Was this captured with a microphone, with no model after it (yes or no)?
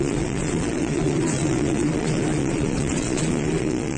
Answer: no